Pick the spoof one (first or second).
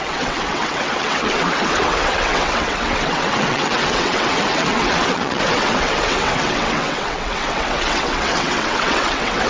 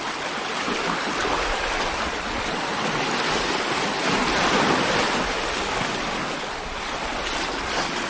first